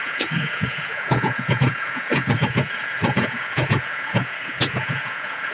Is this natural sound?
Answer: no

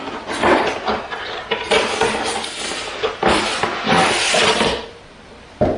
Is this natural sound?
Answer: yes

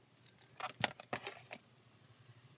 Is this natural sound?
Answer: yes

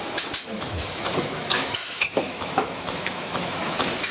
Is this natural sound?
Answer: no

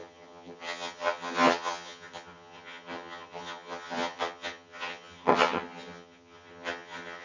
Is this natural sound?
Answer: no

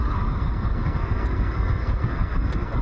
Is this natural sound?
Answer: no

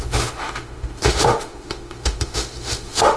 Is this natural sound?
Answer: no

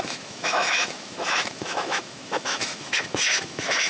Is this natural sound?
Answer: no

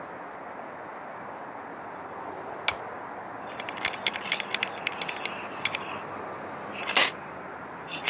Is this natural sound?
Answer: yes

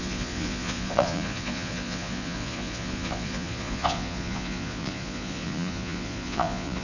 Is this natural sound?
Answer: no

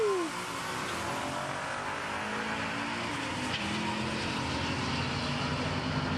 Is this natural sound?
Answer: yes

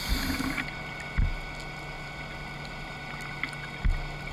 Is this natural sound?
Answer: yes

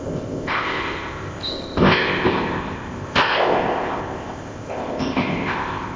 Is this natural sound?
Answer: no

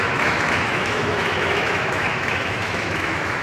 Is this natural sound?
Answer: no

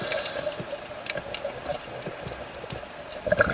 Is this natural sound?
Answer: no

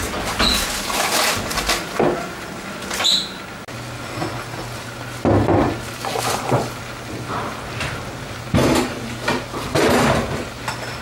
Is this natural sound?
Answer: yes